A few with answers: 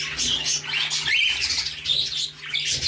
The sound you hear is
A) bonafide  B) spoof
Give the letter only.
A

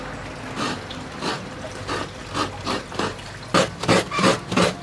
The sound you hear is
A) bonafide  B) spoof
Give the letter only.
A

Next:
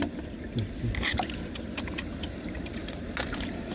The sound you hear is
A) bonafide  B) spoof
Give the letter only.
A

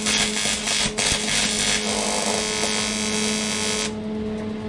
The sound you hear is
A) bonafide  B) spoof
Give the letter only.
A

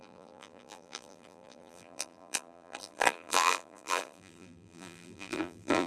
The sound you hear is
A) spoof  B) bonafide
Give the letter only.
A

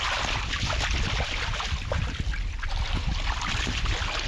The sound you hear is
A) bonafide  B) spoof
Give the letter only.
A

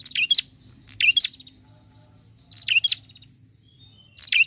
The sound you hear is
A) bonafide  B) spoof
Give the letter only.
A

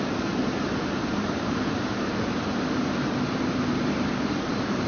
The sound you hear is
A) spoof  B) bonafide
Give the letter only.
A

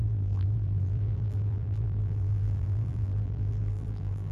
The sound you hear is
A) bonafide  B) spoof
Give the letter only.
B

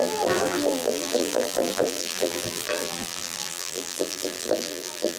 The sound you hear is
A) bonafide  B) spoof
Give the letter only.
B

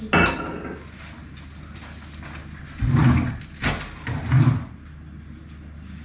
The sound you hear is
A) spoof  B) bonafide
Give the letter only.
B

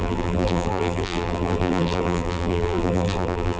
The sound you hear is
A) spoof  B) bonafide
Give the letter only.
A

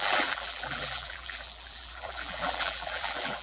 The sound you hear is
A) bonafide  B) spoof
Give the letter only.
B